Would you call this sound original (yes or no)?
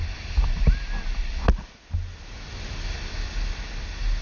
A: yes